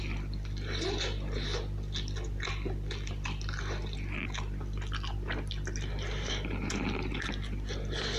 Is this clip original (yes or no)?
yes